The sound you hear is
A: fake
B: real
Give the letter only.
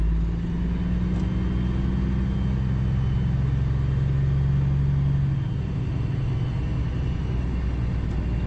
B